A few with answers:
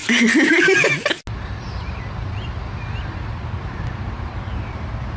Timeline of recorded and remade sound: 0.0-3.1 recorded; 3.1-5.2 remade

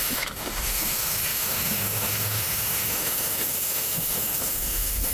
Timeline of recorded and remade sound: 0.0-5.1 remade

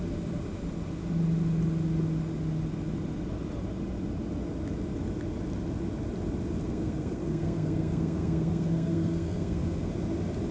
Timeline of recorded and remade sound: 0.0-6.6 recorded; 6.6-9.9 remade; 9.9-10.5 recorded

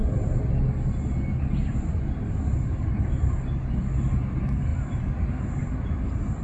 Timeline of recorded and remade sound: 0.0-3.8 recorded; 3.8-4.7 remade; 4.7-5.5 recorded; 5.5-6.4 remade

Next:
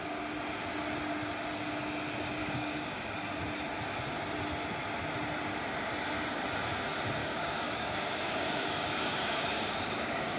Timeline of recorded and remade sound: 0.0-2.4 recorded; 2.4-3.3 remade; 3.3-7.2 recorded; 7.2-10.4 remade

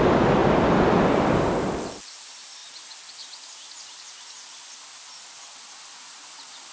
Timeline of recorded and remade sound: 0.0-6.7 recorded

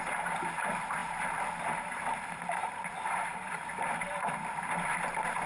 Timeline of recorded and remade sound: 0.0-1.0 recorded; 1.0-4.3 remade; 4.3-5.5 recorded